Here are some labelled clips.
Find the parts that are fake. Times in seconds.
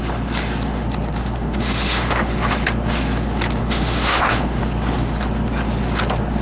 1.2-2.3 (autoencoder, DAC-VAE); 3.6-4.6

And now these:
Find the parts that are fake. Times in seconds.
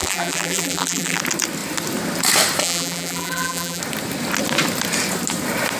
0.0-1.2 (vocoder, BigVGAN v2); 2.6-3.8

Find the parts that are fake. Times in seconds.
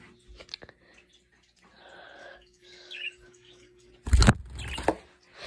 2.2-3.9 (codec, DAC)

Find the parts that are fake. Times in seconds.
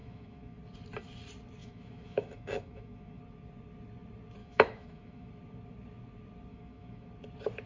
0.0-0.6 (autoencoder, DAC-VAE); 1.6-3.2; 4.4-5.3; 6.5-7.1